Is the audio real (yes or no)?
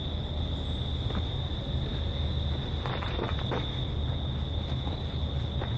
yes